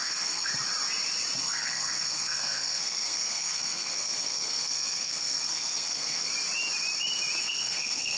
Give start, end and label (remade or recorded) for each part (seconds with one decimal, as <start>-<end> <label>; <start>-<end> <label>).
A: 0.0-0.5 remade; 0.5-1.4 recorded; 1.4-6.3 remade; 6.3-7.4 recorded; 7.4-8.2 remade